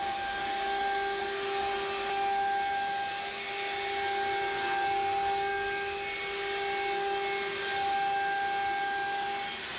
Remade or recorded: recorded